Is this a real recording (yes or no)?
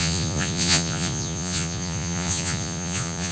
no